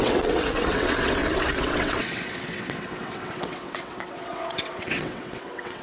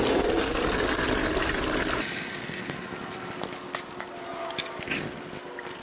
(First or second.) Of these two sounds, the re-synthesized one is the first